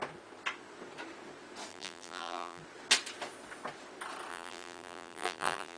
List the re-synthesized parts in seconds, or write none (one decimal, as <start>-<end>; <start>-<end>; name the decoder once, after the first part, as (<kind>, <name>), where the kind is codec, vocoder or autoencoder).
1.7-2.6 (vocoder, BigVGAN v2); 4.3-5.8

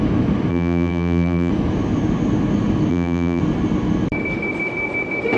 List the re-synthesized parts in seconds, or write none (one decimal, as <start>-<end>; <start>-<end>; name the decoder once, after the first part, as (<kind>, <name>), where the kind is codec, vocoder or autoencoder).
0.5-1.5 (vocoder, BigVGAN v2); 2.9-3.4

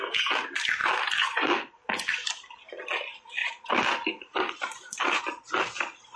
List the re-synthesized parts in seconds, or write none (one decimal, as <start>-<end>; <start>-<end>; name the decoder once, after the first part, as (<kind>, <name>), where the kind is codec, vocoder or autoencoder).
3.4-5.2 (vocoder, BigVGAN v2)

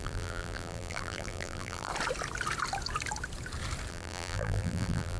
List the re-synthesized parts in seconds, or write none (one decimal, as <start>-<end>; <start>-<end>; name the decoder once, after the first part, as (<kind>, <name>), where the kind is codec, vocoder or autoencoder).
0.0-1.9 (vocoder, BigVGAN v2); 3.9-5.2

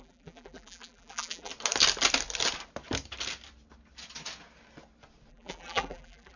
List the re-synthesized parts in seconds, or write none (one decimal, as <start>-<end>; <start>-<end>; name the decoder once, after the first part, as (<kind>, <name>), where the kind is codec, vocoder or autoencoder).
0.0-1.5 (vocoder, BigVGAN v2); 5.3-6.4

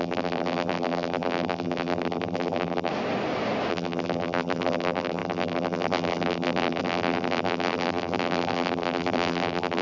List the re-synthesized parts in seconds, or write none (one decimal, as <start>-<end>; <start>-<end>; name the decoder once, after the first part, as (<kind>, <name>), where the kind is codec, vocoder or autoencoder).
0.0-2.9 (vocoder, BigVGAN v2); 3.7-9.8

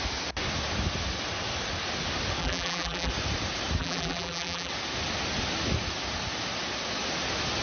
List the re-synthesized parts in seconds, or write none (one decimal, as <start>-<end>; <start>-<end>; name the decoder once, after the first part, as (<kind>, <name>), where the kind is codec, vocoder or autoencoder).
2.4-3.1 (vocoder, BigVGAN v2); 3.8-4.7

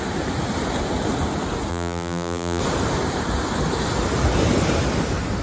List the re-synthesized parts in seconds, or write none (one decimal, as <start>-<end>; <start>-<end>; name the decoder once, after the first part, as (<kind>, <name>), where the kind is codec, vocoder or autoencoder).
1.7-2.6 (vocoder, BigVGAN v2)